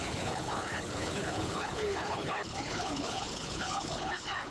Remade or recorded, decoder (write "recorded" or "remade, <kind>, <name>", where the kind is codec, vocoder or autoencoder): remade, codec, HILCodec